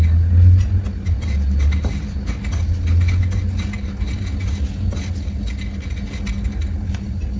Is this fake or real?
real